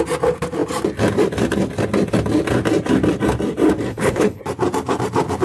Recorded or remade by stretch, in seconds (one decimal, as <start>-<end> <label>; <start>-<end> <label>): 0.0-3.9 recorded; 3.9-4.4 remade; 4.4-5.4 recorded